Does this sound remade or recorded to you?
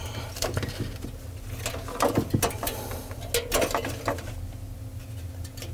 recorded